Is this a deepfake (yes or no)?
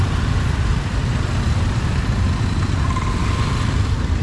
yes